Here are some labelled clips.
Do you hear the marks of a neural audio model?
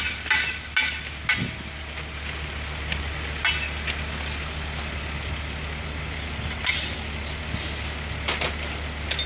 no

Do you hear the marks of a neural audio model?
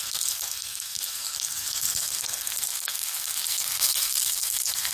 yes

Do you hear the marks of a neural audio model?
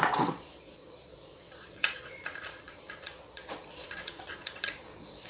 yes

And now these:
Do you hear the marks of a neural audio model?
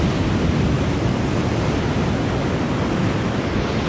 no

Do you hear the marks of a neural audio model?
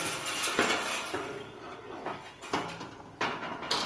no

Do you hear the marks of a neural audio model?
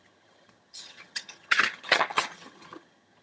yes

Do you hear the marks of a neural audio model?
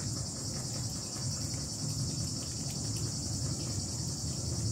no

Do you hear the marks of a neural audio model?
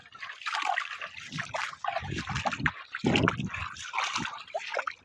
yes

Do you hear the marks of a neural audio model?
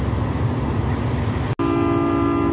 no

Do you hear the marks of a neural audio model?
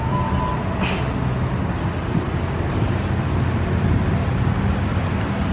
no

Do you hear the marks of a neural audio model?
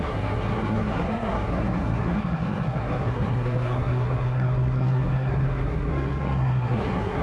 yes